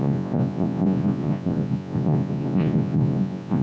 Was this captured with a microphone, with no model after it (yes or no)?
no